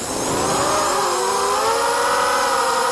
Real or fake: real